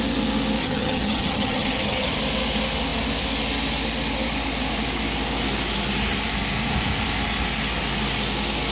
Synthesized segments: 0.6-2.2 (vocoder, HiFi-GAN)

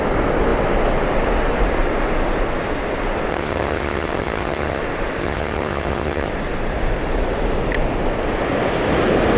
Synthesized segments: 3.3-4.8 (vocoder, HiFi-GAN); 5.2-6.3